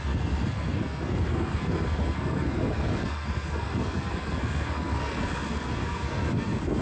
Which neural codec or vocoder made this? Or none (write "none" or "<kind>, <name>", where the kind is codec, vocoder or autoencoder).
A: codec, SNAC